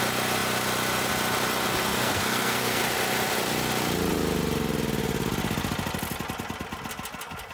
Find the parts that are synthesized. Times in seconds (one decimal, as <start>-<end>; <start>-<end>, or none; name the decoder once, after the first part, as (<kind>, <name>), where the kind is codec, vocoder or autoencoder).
1.9-2.8 (codec, SNAC)